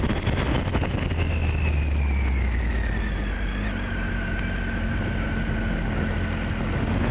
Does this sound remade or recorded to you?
recorded